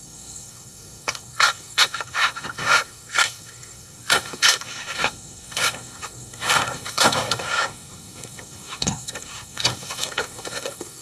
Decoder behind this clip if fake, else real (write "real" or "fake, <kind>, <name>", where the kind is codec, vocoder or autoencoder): fake, codec, SNAC